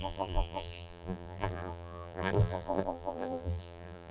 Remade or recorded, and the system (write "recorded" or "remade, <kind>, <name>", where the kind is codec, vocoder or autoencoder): remade, vocoder, BigVGAN v2